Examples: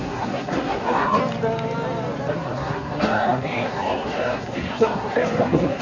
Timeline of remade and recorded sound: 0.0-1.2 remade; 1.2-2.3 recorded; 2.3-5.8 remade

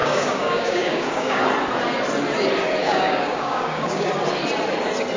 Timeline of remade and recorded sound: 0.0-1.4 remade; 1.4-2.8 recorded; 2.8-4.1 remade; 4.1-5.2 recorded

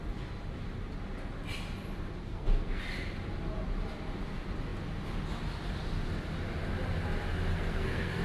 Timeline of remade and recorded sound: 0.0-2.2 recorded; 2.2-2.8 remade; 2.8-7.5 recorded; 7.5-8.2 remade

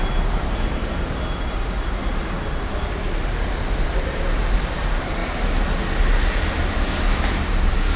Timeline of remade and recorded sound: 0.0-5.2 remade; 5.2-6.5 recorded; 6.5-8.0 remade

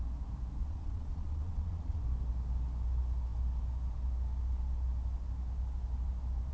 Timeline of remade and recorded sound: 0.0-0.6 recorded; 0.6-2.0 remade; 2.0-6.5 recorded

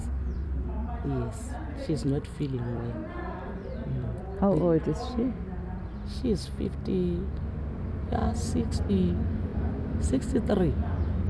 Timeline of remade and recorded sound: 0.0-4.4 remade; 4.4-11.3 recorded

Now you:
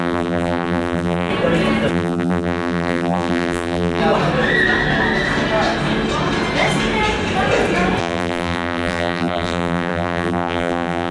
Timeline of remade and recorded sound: 0.0-1.3 remade; 1.3-1.9 recorded; 1.9-4.0 remade; 4.0-8.0 recorded; 8.0-11.1 remade

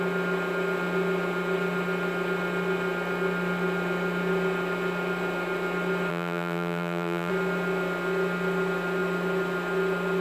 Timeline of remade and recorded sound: 0.0-6.1 recorded; 6.1-7.3 remade; 7.3-10.2 recorded